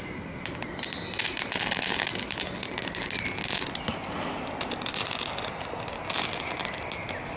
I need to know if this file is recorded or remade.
recorded